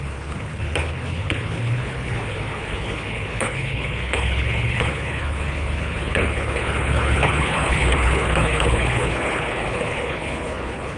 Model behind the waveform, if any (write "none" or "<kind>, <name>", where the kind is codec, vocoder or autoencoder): codec, HILCodec